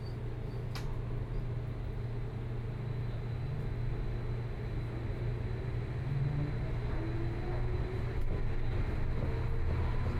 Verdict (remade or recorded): recorded